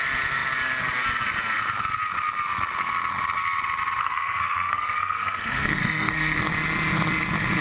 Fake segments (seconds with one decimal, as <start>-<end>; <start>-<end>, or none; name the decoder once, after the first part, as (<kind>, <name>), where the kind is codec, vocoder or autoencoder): 4.0-6.4 (codec, SNAC)